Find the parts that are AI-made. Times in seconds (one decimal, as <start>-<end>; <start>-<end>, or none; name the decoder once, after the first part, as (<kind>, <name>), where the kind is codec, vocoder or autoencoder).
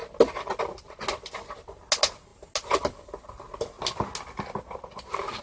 none